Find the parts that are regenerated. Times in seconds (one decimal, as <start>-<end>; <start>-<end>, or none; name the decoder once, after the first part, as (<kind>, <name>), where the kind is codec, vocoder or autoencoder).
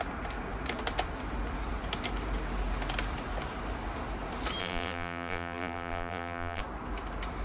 4.6-6.6 (vocoder, BigVGAN v2)